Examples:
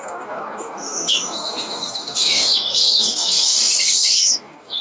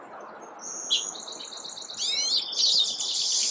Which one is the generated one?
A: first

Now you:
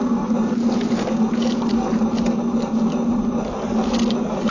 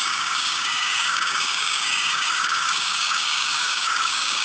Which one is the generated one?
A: second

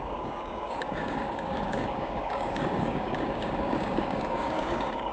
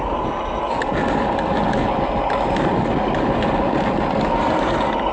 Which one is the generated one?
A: first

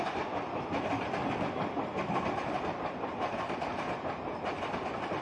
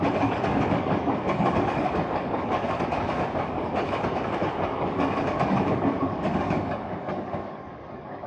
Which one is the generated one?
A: second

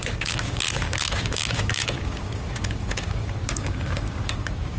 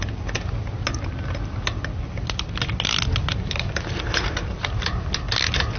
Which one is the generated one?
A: first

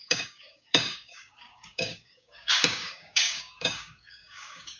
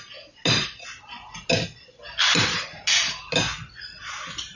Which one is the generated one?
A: first